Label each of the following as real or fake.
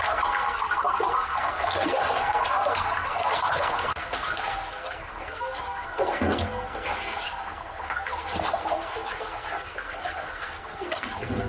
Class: fake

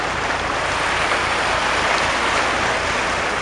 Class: real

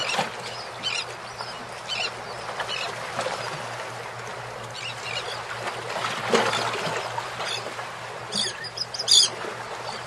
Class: real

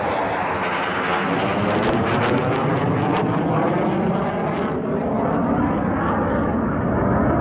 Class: real